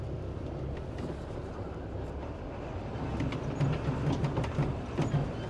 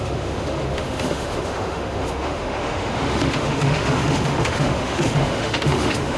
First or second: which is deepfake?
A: second